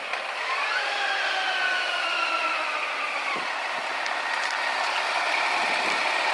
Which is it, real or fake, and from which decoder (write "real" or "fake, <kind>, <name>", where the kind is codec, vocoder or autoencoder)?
fake, vocoder, BigVGAN v2